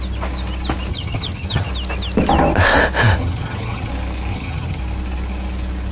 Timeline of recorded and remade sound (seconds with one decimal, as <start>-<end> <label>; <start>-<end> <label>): 0.0-0.9 recorded; 0.9-1.7 remade; 1.7-3.2 recorded; 3.2-3.9 remade; 3.9-4.3 recorded; 4.3-4.8 remade; 4.8-5.9 recorded